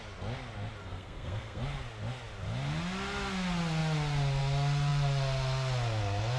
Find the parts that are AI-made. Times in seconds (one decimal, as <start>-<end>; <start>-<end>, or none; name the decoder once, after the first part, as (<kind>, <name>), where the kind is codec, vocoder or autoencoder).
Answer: 0.8-1.6 (codec, SNAC)